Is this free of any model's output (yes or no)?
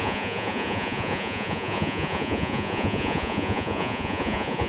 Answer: no